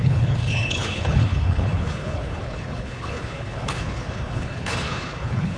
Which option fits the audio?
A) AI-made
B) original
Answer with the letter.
A